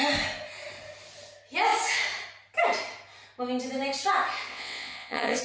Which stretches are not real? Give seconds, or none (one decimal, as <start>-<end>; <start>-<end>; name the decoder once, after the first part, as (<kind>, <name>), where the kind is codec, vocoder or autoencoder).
4.5-5.4 (vocoder, WaveNeXt)